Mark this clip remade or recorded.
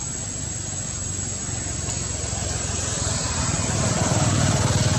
recorded